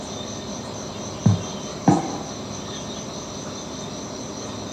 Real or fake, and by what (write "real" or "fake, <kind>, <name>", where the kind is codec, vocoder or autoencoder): real